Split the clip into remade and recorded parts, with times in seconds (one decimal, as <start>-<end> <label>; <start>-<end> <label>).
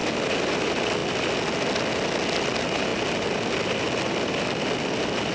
0.0-5.3 recorded